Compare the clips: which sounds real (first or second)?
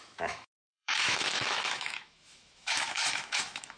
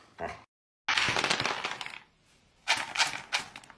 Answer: second